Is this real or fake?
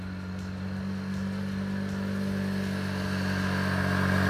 real